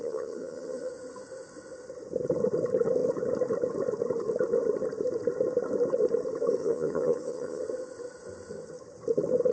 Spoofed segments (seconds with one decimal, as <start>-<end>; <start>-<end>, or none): 0.0-0.9; 6.6-7.6